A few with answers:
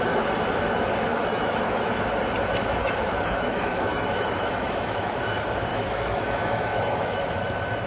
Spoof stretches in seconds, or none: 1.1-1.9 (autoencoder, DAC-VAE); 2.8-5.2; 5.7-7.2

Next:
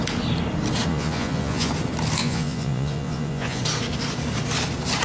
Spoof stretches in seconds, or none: 0.9-1.7 (vocoder, Vocos); 2.2-3.6

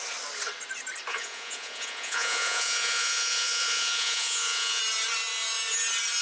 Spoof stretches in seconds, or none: 1.1-4.8 (vocoder, Vocos)